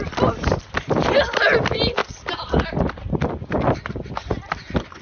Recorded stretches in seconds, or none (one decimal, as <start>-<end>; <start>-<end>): 0.0-5.0